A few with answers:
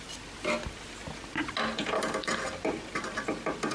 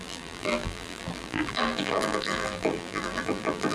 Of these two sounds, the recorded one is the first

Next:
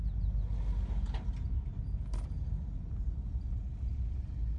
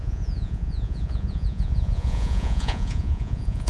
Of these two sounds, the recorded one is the first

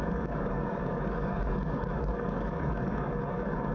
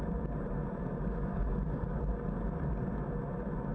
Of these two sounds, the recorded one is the second